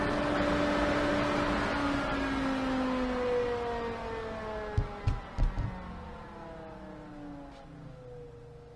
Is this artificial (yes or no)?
no